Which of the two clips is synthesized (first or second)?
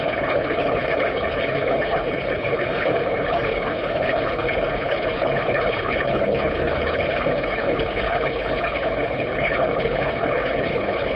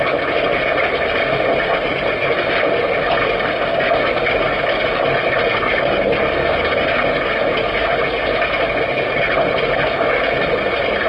first